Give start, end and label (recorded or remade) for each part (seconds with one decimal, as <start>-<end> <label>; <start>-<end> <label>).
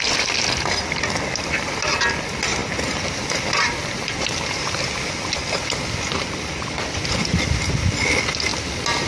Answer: 0.0-2.6 recorded; 2.6-4.8 remade; 4.8-9.1 recorded